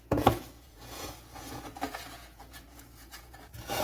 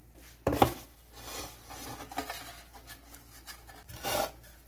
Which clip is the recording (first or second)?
second